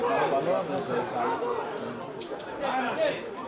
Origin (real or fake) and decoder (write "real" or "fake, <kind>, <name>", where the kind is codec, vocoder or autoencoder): real